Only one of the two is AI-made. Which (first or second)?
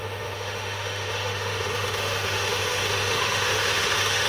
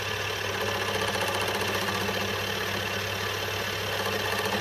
first